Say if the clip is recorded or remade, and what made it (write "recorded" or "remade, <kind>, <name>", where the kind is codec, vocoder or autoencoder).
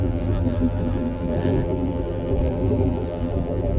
remade, vocoder, BigVGAN v2